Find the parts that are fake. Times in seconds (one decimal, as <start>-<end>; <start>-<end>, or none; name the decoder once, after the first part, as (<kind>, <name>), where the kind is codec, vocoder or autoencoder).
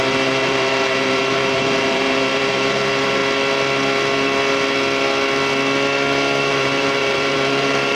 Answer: 0.0-3.2 (vocoder, BigVGAN v2); 6.5-8.0